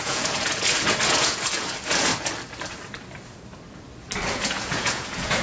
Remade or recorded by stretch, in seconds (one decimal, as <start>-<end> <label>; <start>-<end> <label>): 0.0-2.1 remade; 2.1-4.3 recorded; 4.3-5.4 remade